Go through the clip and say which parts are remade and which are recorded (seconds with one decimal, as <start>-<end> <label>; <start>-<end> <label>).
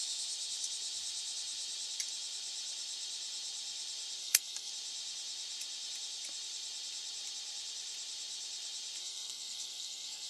0.0-4.2 recorded; 4.2-4.7 remade; 4.7-9.0 recorded; 9.0-10.3 remade